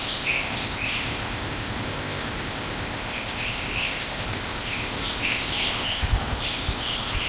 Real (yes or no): no